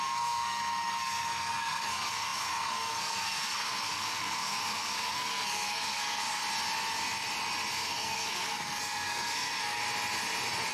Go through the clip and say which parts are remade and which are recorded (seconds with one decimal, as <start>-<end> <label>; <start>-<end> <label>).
0.0-6.4 remade; 6.4-7.7 recorded; 7.7-9.8 remade; 9.8-10.7 recorded